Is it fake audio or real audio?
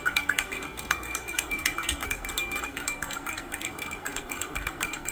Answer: fake